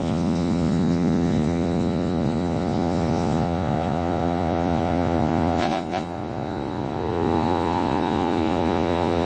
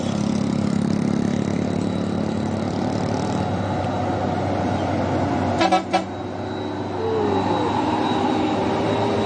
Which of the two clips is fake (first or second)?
first